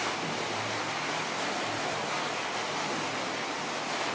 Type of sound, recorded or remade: recorded